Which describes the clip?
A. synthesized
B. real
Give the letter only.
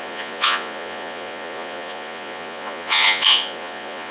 A